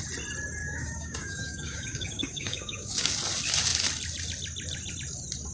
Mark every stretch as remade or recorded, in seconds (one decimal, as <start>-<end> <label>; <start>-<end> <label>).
0.0-0.6 recorded; 0.6-3.1 remade; 3.1-5.5 recorded